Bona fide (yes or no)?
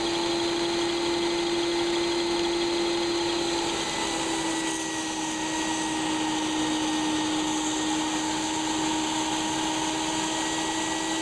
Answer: yes